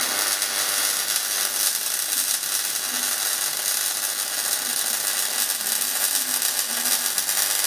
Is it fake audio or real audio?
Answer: real